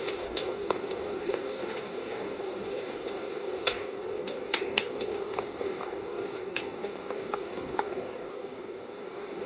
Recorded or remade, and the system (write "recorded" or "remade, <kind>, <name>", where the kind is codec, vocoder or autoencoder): remade, codec, DAC